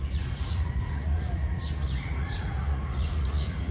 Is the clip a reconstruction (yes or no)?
yes